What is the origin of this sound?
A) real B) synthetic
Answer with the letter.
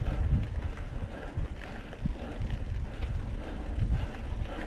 A